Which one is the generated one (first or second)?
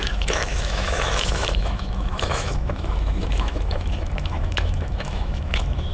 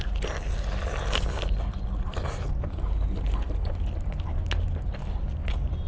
first